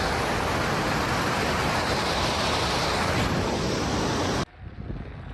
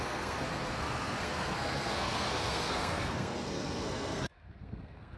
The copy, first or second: second